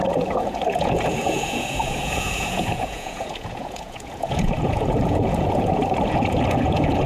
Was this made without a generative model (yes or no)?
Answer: no